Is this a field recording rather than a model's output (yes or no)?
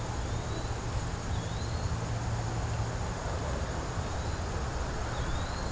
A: yes